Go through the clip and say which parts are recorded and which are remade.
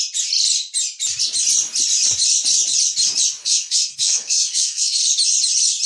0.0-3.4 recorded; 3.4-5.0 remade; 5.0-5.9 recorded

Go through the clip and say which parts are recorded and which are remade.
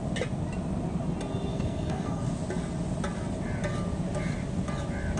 0.0-1.5 recorded; 1.5-2.3 remade; 2.3-5.2 recorded